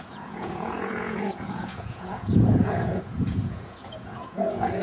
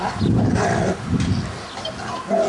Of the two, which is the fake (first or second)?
first